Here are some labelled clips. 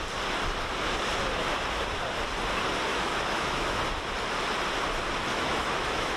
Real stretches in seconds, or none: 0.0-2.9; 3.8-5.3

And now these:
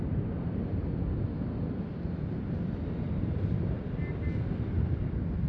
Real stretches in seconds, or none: 0.0-5.5